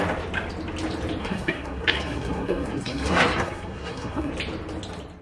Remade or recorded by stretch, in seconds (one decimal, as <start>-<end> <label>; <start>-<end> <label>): 0.0-1.2 recorded; 1.2-4.3 remade; 4.3-5.2 recorded